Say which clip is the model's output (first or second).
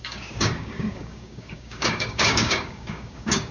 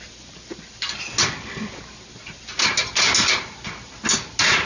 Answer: first